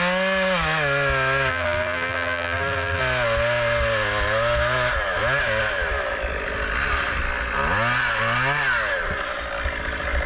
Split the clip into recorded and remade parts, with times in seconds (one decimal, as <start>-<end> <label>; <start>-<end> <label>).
0.0-1.5 recorded; 1.5-3.0 remade; 3.0-10.3 recorded